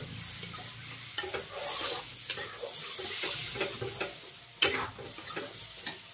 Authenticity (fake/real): real